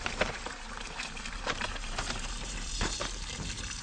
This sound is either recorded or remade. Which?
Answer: remade